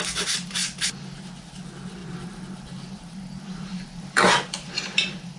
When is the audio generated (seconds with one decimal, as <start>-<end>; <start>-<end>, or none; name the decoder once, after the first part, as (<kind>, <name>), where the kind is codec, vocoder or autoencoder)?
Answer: 2.0-5.4 (vocoder, BigVGAN v2)